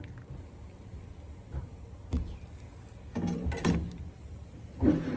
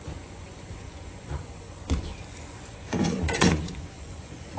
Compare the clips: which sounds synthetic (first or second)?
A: second